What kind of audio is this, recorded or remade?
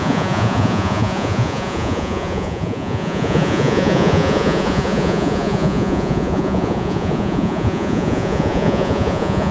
remade